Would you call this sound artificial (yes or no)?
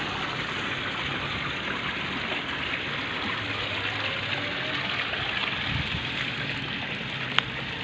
no